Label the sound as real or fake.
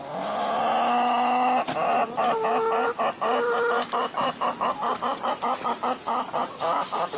real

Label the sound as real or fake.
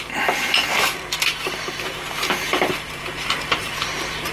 fake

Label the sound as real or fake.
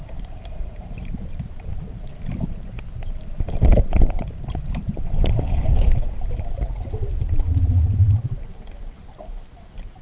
fake